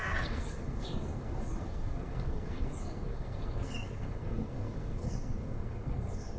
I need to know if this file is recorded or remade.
remade